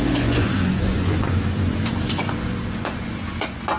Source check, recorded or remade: remade